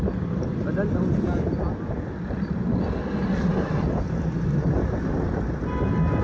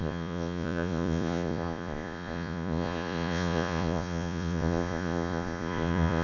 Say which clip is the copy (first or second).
second